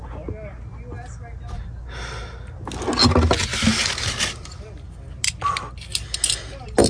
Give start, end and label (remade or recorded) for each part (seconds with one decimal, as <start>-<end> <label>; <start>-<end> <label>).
0.0-6.9 recorded